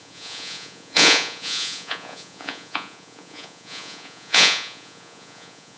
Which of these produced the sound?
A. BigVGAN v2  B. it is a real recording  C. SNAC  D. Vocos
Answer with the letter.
D